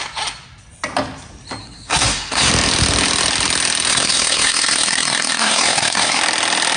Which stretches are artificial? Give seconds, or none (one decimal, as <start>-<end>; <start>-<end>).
1.6-2.5; 3.9-6.2